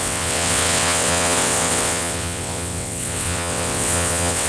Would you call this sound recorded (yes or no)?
no